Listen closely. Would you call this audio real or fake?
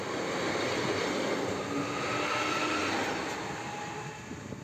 real